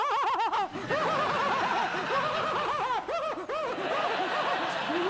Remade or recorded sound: recorded